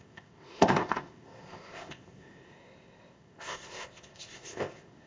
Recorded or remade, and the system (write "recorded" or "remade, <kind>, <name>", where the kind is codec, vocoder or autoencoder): remade, codec, ZipCodec